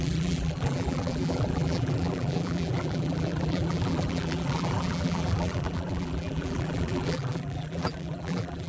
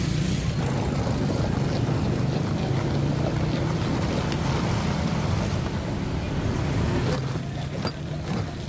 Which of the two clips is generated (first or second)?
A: first